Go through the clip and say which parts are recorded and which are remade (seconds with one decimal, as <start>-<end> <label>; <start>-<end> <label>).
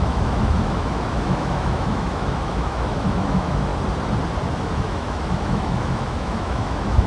0.0-3.7 remade; 3.7-4.6 recorded; 4.6-7.1 remade